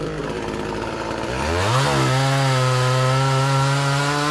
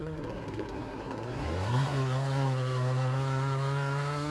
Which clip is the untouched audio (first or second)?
first